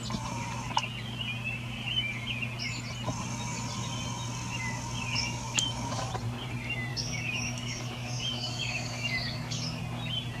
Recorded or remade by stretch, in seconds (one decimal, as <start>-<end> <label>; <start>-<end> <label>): 0.0-5.2 recorded; 5.2-6.1 remade; 6.1-6.9 recorded; 6.9-9.8 remade; 9.8-10.4 recorded